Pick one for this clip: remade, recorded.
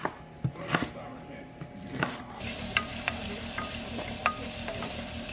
recorded